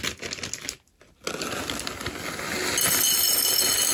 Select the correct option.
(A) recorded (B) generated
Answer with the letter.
A